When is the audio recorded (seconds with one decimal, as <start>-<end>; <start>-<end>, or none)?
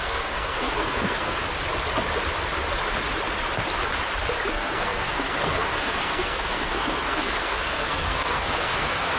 1.4-4.5